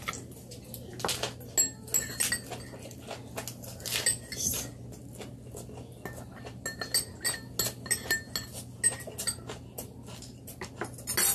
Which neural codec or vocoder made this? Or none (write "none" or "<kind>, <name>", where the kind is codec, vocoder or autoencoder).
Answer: none